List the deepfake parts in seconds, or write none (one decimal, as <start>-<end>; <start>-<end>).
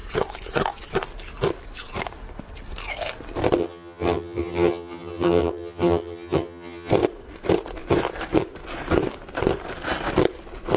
3.6-6.9